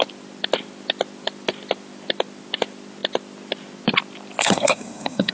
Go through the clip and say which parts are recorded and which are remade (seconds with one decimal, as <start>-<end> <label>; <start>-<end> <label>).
0.0-4.4 recorded; 4.4-5.3 remade